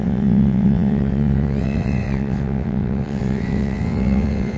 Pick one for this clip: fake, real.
fake